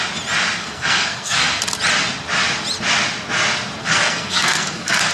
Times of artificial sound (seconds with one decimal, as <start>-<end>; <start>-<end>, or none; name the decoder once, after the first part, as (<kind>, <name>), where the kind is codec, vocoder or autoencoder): 0.6-1.6 (codec, SNAC); 3.8-5.1